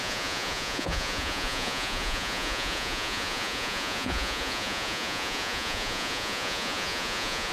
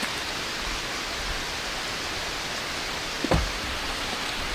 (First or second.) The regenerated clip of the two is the first